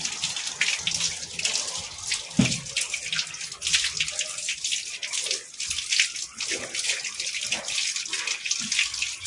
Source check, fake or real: real